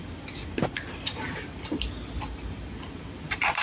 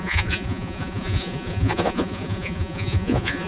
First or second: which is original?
first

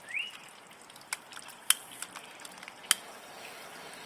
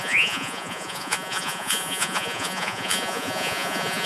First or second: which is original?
first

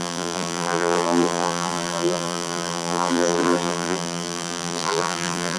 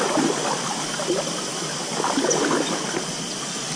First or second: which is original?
second